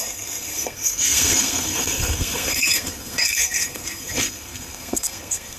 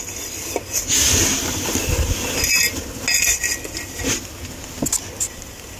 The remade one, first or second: first